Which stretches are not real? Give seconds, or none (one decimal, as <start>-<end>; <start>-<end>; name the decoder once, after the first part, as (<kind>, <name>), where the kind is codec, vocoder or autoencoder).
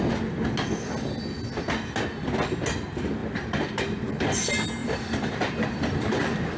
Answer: 3.2-3.7 (vocoder, BigVGAN v2); 4.8-6.6